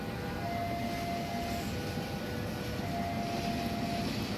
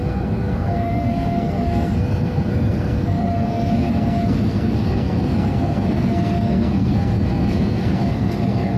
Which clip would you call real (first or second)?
first